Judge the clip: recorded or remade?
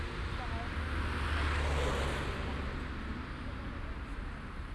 recorded